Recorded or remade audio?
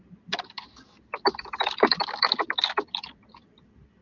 recorded